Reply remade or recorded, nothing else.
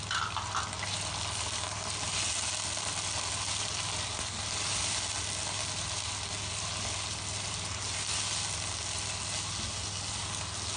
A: recorded